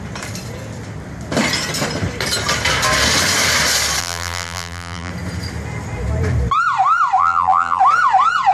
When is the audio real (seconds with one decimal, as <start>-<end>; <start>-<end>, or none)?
0.0-4.0; 5.1-7.2; 7.8-8.5